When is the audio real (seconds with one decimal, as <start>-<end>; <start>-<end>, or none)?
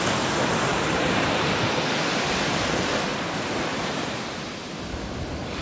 0.0-0.7; 1.6-3.1; 4.8-5.6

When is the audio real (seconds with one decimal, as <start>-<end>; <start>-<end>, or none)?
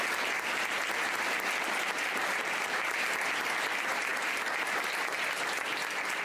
0.0-6.2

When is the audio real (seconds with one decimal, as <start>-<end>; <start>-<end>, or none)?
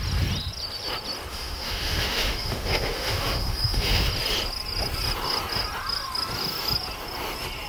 0.0-1.3; 4.1-7.7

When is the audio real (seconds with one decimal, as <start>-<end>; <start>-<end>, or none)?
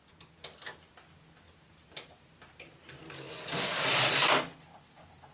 0.0-5.3